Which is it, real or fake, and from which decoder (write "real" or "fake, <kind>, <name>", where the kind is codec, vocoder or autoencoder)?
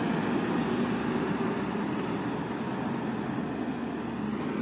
real